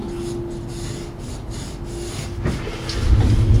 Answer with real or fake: real